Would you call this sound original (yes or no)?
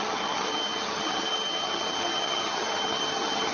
no